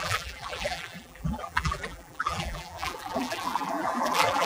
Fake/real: fake